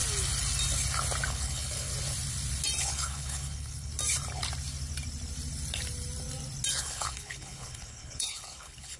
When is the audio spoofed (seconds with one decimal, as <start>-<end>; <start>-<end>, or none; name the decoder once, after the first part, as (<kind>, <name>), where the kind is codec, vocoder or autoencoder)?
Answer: 1.3-1.9 (codec, HILCodec); 2.8-3.9; 6.7-9.0